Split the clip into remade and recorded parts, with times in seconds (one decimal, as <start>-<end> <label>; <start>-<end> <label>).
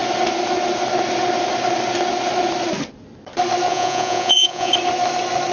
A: 0.0-3.7 recorded; 3.7-4.7 remade; 4.7-5.5 recorded